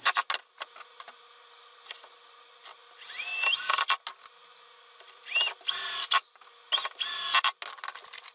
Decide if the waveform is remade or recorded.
recorded